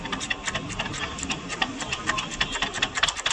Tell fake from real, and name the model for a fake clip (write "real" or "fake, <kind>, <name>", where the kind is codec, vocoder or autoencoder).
real